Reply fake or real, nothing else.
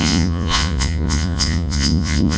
fake